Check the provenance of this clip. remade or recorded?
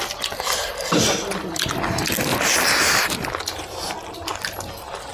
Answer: recorded